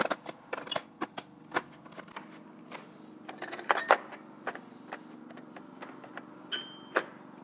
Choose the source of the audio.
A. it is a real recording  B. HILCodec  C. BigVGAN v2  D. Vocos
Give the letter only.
A